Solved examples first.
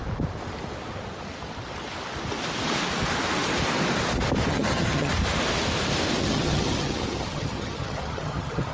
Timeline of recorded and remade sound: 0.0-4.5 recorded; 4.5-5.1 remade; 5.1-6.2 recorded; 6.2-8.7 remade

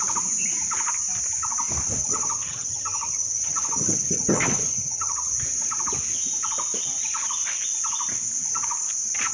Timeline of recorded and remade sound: 0.0-2.0 recorded; 2.0-5.3 remade; 5.3-9.3 recorded

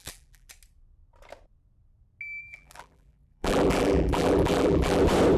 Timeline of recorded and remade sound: 0.0-0.5 remade; 0.5-2.4 recorded; 2.4-5.0 remade; 5.0-5.4 recorded

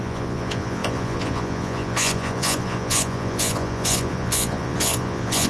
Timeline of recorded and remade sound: 0.0-5.5 remade

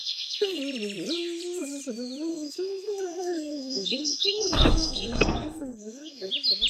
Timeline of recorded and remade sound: 0.0-0.6 remade; 0.6-2.3 recorded; 2.3-6.3 remade; 6.3-6.7 recorded

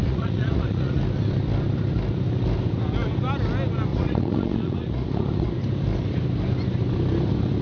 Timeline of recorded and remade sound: 0.0-1.0 remade; 1.0-3.9 recorded; 3.9-5.5 remade; 5.5-7.6 recorded

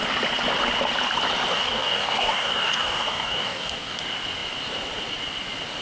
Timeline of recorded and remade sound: 0.0-1.5 recorded; 1.5-4.0 remade; 4.0-5.8 recorded

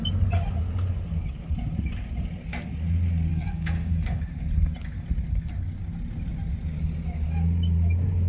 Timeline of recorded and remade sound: 0.0-3.3 recorded; 3.3-4.2 remade; 4.2-8.3 recorded